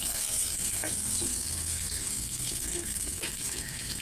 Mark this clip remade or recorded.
remade